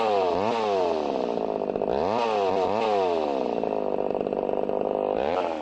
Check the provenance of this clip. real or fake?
real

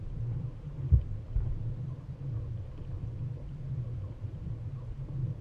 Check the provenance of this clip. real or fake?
fake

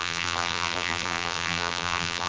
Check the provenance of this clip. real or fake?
fake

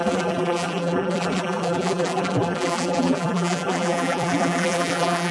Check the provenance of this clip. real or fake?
fake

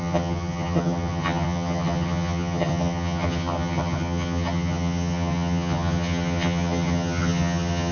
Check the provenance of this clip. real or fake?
fake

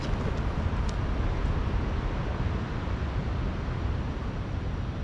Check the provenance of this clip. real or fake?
real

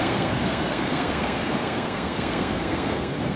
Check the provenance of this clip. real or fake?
fake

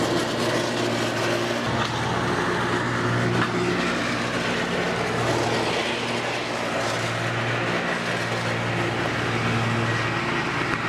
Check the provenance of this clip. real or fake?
real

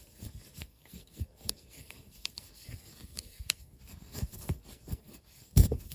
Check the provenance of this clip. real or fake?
fake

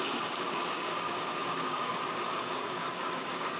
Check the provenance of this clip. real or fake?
fake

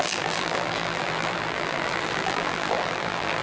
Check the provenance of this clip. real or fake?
fake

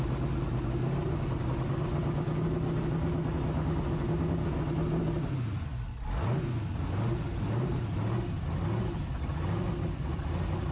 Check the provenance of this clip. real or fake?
real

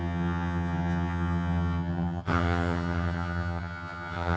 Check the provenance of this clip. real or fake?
fake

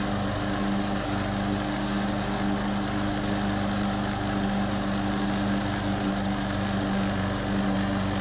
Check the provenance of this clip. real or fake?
real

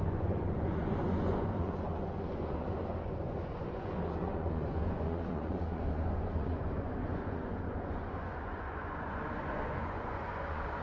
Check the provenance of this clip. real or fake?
fake